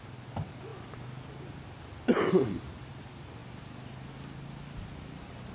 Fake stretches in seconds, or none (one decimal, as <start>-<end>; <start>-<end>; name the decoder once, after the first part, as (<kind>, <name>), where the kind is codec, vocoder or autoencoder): none